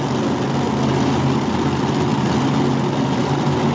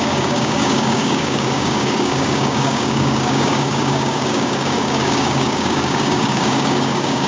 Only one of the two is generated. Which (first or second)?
second